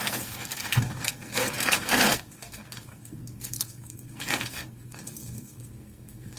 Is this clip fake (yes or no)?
yes